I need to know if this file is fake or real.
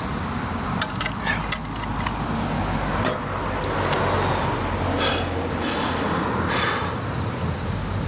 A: real